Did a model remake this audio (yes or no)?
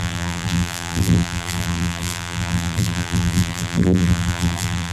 yes